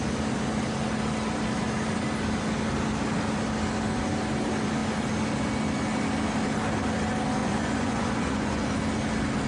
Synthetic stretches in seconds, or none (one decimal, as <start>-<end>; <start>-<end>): 7.4-8.7